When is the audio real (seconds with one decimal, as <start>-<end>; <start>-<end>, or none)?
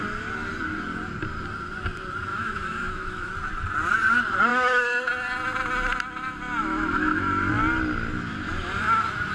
0.0-2.3; 3.3-4.5; 5.1-6.6; 7.5-9.3